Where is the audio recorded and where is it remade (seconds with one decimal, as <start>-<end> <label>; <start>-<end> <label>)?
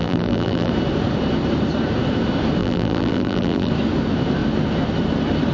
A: 0.0-0.7 remade; 0.7-2.6 recorded; 2.6-3.7 remade; 3.7-5.5 recorded